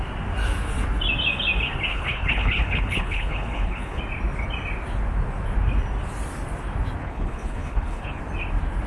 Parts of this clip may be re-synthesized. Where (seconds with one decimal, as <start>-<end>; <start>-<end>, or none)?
1.9-4.0; 7.0-8.2